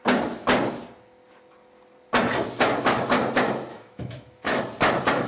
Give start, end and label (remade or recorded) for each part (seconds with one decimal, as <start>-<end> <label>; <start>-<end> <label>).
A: 0.0-3.7 recorded; 3.7-4.6 remade; 4.6-5.3 recorded